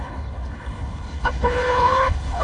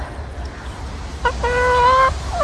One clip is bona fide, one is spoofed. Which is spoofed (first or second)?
first